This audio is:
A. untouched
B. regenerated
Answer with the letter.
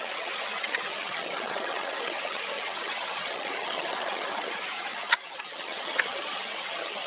B